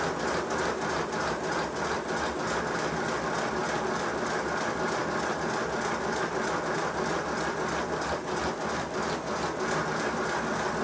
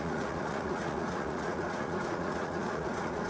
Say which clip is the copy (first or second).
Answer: second